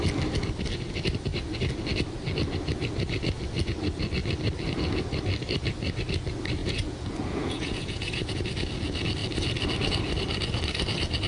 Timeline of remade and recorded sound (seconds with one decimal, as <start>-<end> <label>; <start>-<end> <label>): 0.0-6.6 recorded; 6.6-8.4 remade; 8.4-11.3 recorded